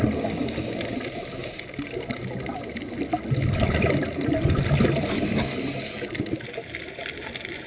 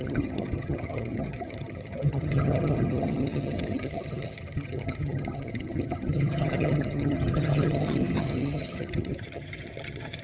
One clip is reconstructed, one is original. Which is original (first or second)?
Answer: first